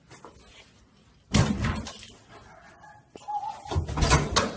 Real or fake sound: real